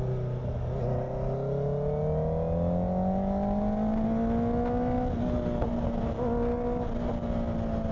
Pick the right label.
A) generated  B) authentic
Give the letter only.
B